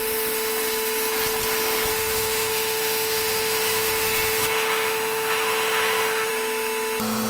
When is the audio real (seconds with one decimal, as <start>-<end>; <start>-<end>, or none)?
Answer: 0.0-1.9; 6.3-7.3